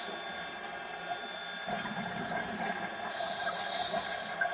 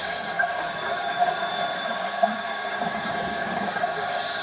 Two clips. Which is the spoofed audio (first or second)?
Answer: second